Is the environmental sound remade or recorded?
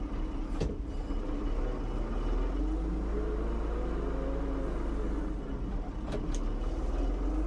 recorded